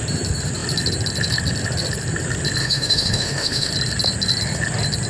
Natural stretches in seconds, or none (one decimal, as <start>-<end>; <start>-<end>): 0.0-2.6; 3.7-5.1